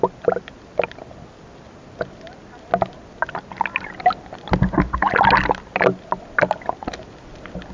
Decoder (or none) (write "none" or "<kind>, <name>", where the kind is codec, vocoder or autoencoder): none